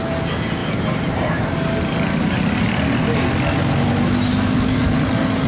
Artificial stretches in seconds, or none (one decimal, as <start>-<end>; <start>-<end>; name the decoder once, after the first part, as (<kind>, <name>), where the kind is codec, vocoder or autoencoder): 0.6-1.4 (vocoder, BigVGAN v2)